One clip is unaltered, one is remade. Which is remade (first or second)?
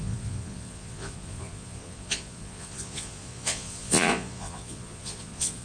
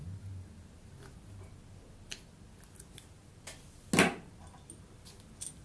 first